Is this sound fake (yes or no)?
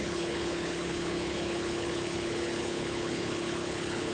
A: yes